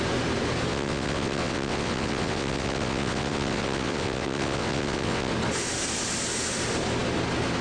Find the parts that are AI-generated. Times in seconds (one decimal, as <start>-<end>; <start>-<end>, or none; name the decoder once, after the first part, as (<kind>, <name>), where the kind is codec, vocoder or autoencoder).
0.7-5.3 (vocoder, WaveNeXt)